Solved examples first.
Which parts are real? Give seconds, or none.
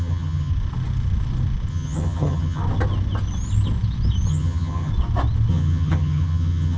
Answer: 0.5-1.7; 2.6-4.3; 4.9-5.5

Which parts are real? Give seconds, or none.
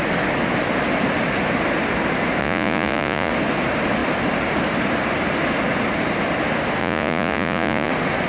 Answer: 0.0-2.4; 3.3-6.8; 7.9-8.3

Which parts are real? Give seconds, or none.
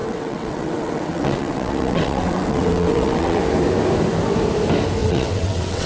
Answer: 3.4-5.0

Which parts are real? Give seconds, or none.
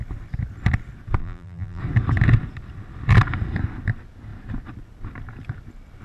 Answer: 0.0-1.2; 1.8-6.0